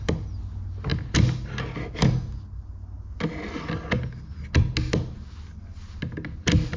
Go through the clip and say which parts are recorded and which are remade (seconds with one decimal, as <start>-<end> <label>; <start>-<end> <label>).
0.0-6.8 recorded